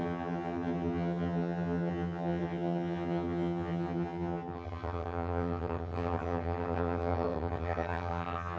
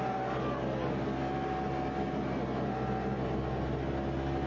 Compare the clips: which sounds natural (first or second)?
second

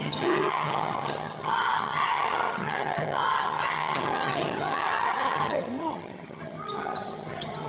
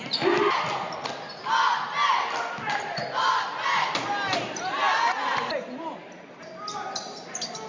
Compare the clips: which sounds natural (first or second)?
second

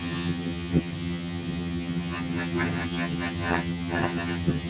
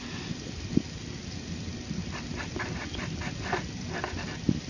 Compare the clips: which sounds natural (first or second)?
second